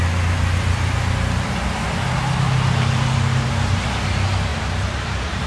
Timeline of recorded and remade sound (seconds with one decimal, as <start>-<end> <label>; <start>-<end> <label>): 0.0-4.5 recorded; 4.5-5.5 remade